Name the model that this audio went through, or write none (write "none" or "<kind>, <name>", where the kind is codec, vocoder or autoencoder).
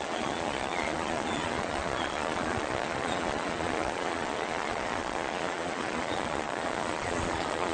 vocoder, Vocos